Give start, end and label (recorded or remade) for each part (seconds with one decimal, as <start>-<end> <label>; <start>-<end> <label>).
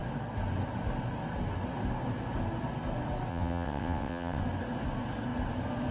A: 0.0-3.3 recorded; 3.3-4.4 remade; 4.4-5.9 recorded